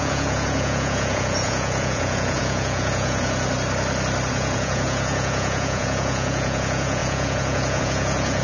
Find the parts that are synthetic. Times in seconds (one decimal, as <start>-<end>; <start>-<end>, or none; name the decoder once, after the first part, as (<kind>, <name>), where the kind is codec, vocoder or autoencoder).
0.0-3.5 (vocoder, Vocos); 4.3-8.4